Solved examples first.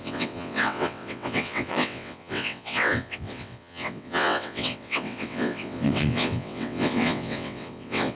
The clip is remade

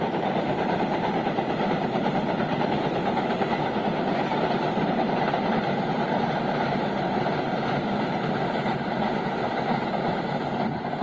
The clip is remade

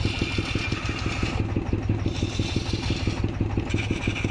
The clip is recorded